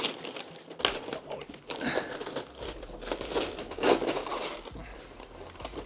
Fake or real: real